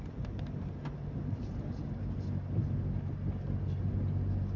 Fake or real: real